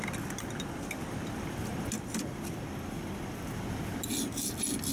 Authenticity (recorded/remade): recorded